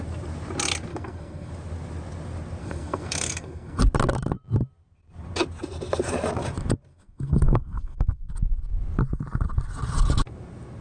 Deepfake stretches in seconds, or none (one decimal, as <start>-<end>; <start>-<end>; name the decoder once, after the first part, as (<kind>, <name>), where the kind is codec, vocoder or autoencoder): 0.9-1.5 (codec, SNAC); 2.6-3.8; 6.9-8.3